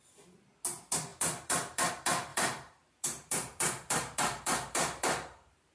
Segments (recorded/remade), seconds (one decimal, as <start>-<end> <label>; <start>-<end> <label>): 0.0-2.3 recorded; 2.3-5.7 remade